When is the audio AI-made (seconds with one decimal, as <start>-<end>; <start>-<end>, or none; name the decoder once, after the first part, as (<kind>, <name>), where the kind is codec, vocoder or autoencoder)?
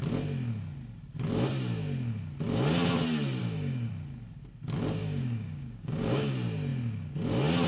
3.4-3.9 (codec, DAC); 5.0-6.3